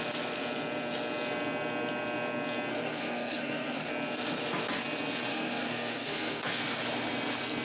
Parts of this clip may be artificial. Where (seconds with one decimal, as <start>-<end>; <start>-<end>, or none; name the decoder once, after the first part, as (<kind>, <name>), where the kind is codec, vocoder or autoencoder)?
2.7-3.9 (codec, SNAC); 5.3-6.6